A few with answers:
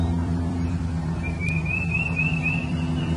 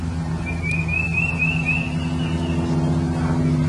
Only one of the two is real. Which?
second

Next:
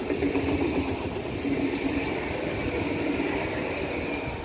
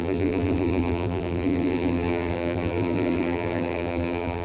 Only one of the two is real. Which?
first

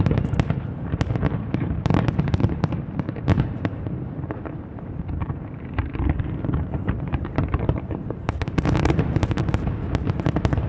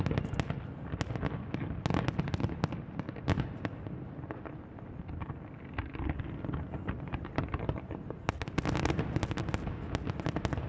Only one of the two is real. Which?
second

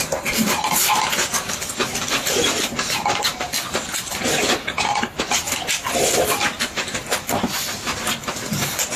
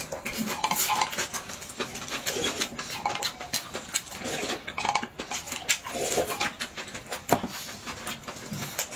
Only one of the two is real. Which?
second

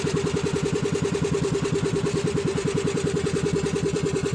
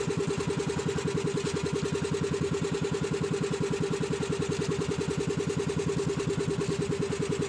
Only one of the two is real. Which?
second